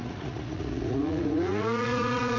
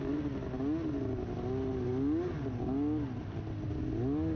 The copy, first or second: first